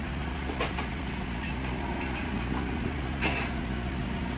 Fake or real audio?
fake